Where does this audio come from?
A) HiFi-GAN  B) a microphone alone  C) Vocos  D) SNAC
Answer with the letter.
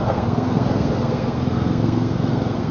D